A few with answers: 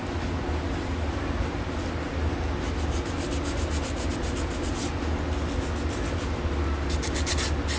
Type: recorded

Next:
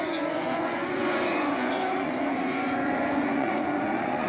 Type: remade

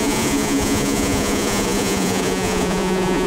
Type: remade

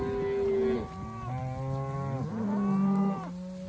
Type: recorded